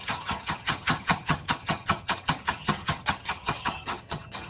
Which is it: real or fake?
fake